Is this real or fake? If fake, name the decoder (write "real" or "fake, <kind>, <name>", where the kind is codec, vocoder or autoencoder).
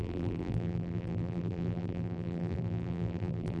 fake, vocoder, BigVGAN v2